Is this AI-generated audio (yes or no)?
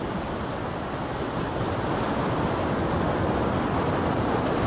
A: no